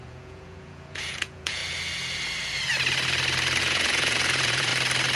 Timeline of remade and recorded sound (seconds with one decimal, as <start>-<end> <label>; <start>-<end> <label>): 0.0-1.6 remade; 1.6-3.6 recorded; 3.6-4.7 remade; 4.7-5.2 recorded